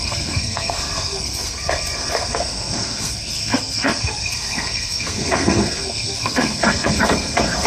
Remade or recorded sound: remade